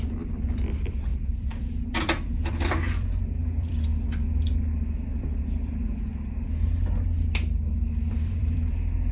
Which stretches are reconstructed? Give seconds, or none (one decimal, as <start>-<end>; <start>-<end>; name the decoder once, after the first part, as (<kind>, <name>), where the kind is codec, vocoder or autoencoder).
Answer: 0.0-6.1 (vocoder, BigVGAN v2); 8.1-9.1